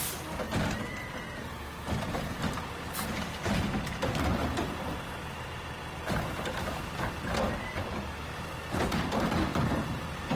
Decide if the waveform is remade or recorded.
recorded